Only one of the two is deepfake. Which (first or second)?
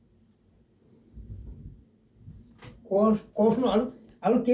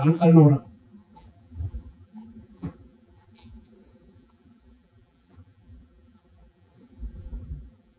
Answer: second